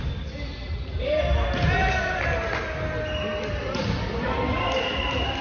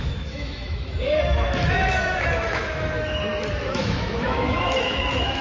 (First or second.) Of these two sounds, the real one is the first